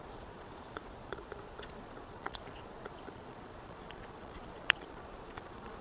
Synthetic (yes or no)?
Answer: yes